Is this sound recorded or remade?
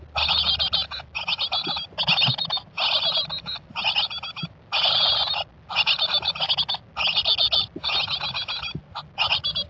recorded